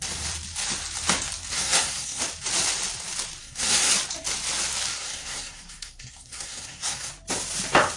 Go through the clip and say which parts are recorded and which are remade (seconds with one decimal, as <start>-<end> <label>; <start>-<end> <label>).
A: 0.0-1.5 recorded; 1.5-2.2 remade; 2.2-3.4 recorded; 3.4-3.9 remade; 3.9-4.9 recorded; 4.9-7.1 remade; 7.1-8.0 recorded